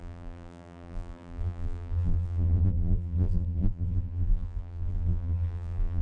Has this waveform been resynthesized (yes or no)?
yes